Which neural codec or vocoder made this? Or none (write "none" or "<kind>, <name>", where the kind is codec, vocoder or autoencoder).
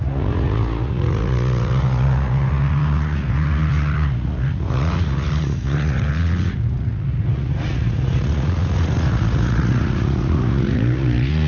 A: vocoder, Vocos